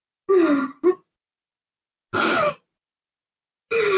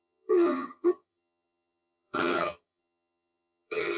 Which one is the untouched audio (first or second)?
first